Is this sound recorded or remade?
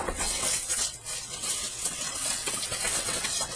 remade